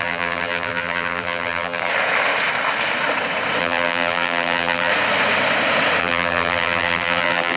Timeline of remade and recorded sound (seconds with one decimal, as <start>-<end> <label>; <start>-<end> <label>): 0.0-1.9 remade; 1.9-3.6 recorded; 3.6-4.9 remade; 4.9-6.0 recorded; 6.0-7.6 remade